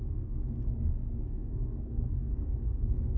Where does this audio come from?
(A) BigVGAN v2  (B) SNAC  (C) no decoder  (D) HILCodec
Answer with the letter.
B